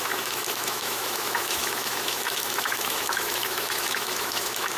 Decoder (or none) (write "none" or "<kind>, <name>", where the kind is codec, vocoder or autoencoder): autoencoder, DAC-VAE